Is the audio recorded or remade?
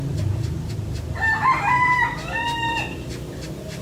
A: recorded